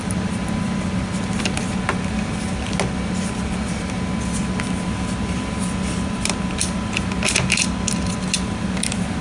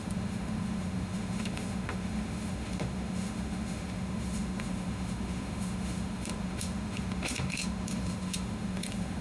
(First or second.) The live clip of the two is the first